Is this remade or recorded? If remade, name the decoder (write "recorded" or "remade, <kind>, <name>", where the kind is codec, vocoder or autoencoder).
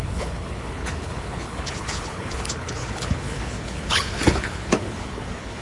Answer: remade, codec, HILCodec